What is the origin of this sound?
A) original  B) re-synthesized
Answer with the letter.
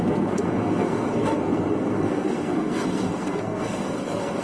B